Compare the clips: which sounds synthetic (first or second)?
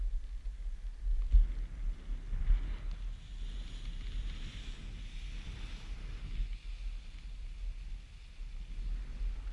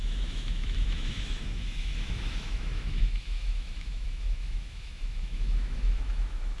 second